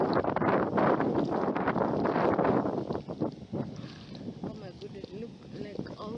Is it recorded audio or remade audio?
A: recorded